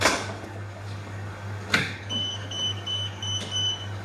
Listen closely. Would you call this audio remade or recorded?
remade